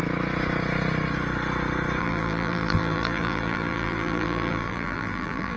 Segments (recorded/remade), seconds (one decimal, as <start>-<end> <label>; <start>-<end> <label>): 0.0-2.0 recorded; 2.0-5.6 remade